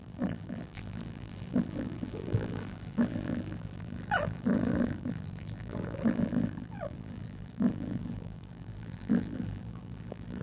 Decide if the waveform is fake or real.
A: fake